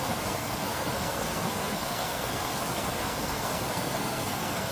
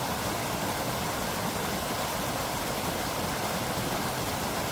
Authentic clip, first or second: second